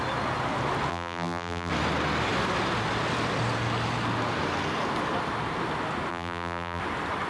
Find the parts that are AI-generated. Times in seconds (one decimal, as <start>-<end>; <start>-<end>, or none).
0.9-1.7; 6.1-6.8